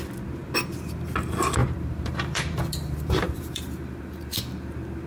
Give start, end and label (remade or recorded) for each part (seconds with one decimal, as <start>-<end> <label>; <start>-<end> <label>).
0.0-1.6 recorded; 1.6-4.4 remade; 4.4-5.1 recorded